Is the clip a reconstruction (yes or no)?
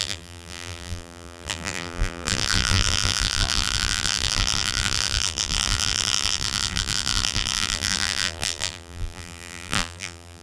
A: yes